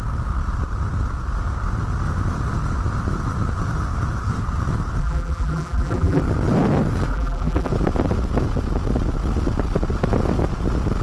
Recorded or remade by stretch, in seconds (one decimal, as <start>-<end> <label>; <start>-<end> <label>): 0.0-5.0 recorded; 5.0-6.2 remade; 6.2-7.1 recorded; 7.1-7.7 remade; 7.7-11.0 recorded